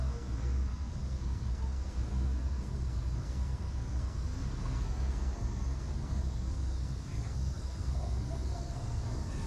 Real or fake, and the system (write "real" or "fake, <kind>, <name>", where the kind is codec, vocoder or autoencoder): fake, codec, SNAC